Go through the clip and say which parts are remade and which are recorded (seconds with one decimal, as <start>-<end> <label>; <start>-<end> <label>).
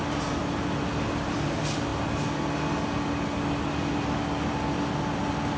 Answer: 0.0-5.6 recorded